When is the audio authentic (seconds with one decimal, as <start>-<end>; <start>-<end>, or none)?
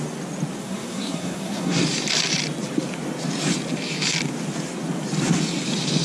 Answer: 0.0-0.6; 1.8-6.0